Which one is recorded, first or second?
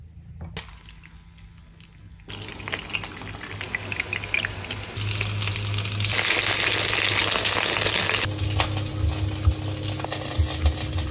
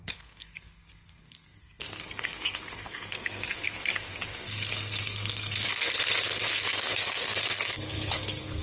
first